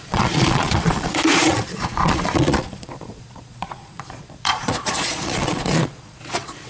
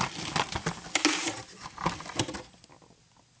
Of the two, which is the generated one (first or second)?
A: first